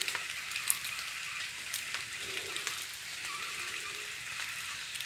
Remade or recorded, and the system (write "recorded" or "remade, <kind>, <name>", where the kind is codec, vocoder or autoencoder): recorded